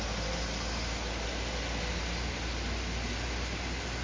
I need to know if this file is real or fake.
real